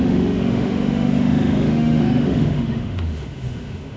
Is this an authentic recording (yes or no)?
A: no